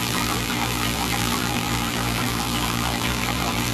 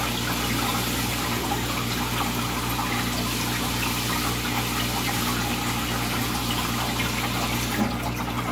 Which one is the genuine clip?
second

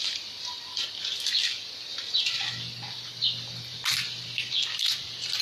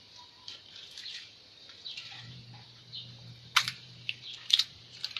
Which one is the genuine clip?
first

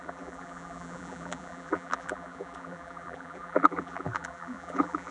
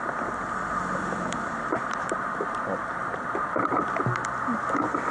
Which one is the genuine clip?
second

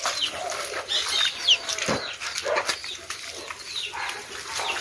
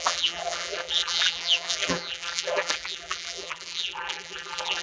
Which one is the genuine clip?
first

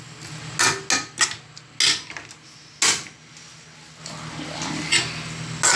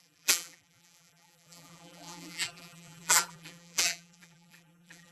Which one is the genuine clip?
first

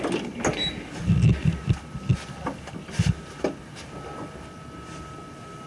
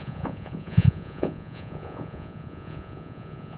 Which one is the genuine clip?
first